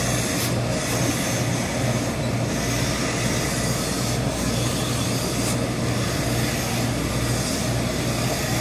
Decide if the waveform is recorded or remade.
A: recorded